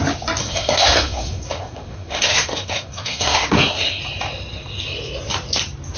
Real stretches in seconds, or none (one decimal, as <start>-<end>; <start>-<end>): 0.0-0.4; 4.0-6.0